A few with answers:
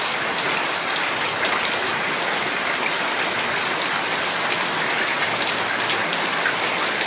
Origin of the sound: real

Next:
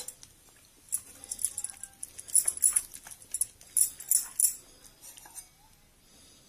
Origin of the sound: real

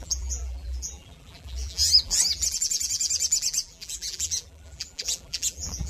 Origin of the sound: fake